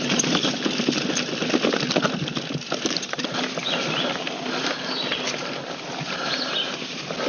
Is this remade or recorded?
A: recorded